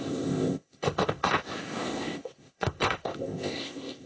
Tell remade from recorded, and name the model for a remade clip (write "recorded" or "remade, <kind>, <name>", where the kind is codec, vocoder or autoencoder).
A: remade, codec, ZipCodec